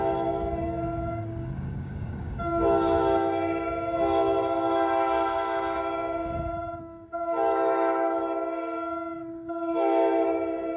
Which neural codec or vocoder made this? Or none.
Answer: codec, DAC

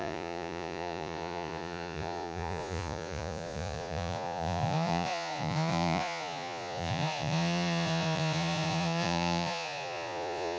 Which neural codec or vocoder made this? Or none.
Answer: vocoder, Vocos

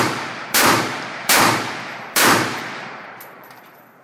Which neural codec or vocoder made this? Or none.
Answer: vocoder, BigVGAN v2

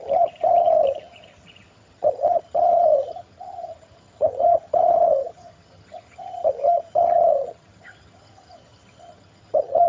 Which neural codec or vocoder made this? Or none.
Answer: vocoder, HiFi-GAN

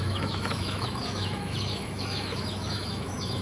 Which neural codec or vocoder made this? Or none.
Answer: autoencoder, DAC-VAE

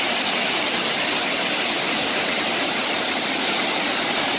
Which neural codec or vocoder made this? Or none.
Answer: none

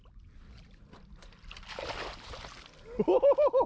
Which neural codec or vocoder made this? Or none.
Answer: none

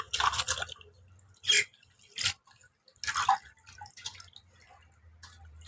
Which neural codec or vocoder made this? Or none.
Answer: none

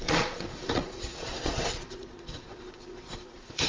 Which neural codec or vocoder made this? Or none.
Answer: vocoder, Vocos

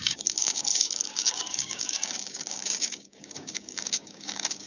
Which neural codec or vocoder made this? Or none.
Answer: codec, DAC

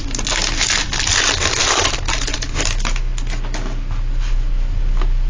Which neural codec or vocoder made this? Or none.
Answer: none